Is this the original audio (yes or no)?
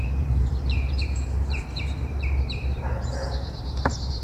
no